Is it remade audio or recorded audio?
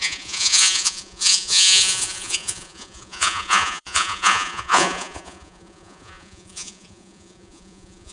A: remade